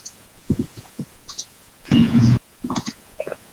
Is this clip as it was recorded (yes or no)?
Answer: no